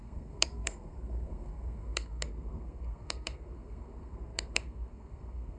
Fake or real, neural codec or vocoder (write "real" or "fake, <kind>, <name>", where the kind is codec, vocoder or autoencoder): fake, codec, SNAC